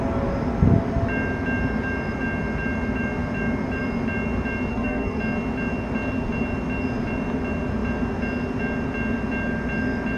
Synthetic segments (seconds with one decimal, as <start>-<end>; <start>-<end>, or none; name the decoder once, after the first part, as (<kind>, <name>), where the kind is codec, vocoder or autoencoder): 4.7-5.2 (codec, SNAC)